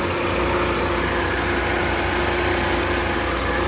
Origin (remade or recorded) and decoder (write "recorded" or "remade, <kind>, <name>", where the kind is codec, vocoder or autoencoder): recorded